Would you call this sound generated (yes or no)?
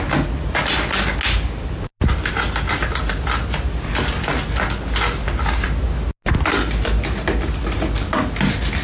no